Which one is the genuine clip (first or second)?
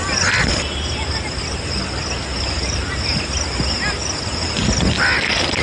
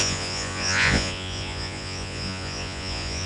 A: first